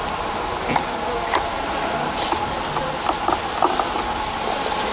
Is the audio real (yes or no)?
yes